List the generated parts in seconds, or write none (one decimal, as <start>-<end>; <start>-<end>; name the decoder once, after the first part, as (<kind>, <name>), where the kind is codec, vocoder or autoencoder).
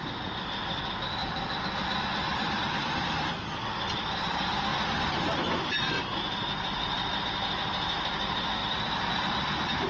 1.2-4.2 (vocoder, BigVGAN v2); 8.6-9.1